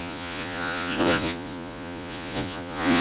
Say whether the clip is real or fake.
fake